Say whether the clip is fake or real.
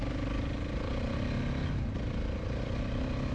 real